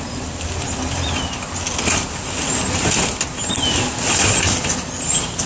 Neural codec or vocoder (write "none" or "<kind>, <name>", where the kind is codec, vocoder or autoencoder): none